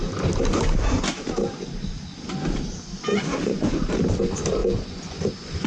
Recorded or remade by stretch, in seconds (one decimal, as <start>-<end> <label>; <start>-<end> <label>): 0.0-3.4 recorded; 3.4-3.9 remade; 3.9-4.6 recorded; 4.6-5.7 remade